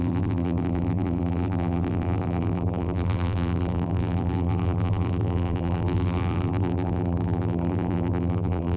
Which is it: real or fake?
fake